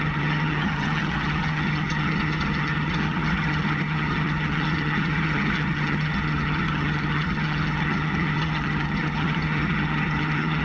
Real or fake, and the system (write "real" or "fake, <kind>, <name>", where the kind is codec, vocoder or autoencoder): fake, vocoder, HiFi-GAN